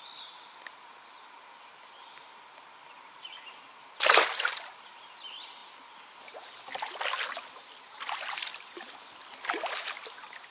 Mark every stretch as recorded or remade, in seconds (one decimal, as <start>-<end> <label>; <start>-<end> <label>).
0.0-10.5 recorded